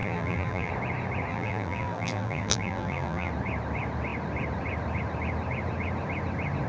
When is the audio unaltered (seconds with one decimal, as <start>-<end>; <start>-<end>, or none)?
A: 0.7-1.3; 3.3-6.7

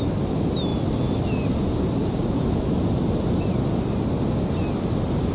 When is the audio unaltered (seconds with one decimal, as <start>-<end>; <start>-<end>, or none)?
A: 0.0-5.3